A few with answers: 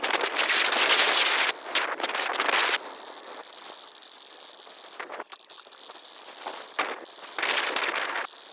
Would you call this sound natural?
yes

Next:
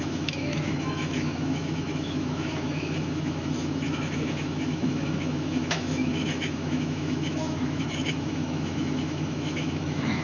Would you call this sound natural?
no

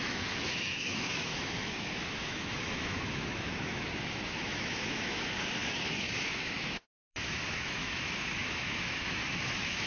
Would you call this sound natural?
no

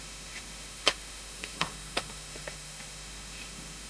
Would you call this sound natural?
no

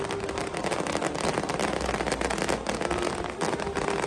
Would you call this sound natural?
yes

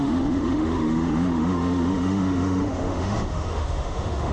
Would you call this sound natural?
no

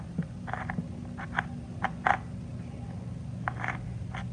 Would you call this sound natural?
yes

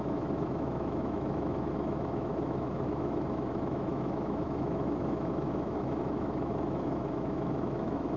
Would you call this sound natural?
no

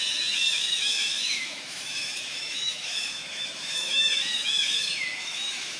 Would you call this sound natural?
no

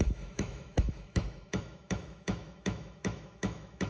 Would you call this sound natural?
no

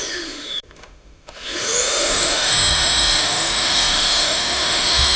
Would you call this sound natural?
no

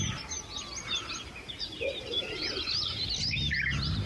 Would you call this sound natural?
yes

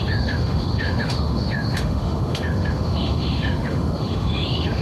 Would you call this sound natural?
no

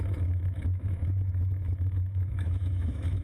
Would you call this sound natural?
no